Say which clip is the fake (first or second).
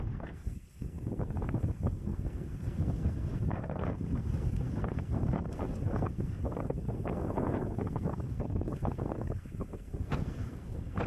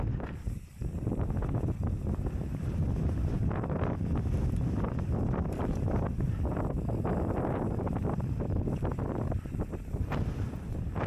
first